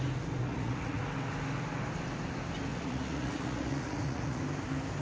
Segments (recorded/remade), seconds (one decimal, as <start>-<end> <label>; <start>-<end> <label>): 0.0-0.4 recorded; 0.4-1.0 remade; 1.0-2.7 recorded; 2.7-4.4 remade; 4.4-5.0 recorded